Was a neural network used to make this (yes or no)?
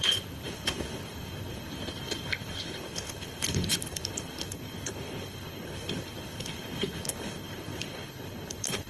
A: yes